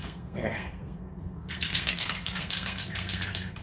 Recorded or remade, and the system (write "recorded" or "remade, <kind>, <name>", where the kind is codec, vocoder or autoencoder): remade, codec, SNAC